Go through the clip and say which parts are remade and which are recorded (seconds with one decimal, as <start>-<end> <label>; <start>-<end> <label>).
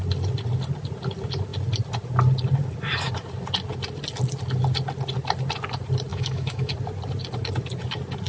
0.0-6.1 recorded; 6.1-6.7 remade; 6.7-8.3 recorded